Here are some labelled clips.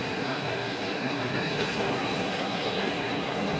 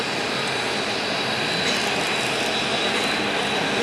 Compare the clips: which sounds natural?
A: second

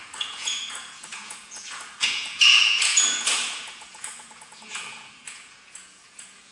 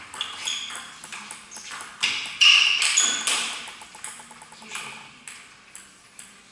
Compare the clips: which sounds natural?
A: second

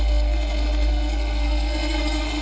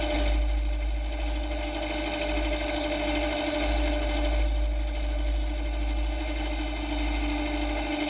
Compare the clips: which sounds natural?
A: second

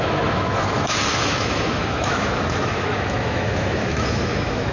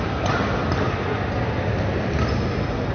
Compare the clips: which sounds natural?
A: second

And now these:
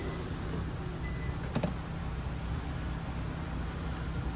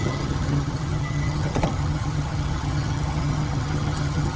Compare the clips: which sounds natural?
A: first